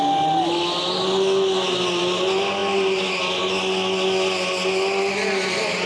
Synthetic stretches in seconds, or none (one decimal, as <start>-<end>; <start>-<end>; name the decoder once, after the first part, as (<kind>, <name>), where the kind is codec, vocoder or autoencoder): none